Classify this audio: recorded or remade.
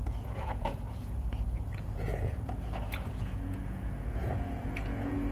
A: remade